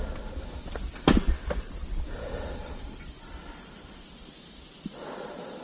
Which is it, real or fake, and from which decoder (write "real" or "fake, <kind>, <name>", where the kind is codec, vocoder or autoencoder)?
real